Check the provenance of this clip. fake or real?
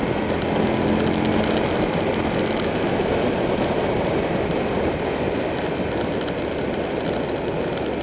real